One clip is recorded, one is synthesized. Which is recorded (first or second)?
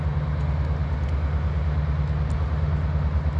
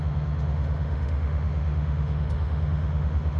first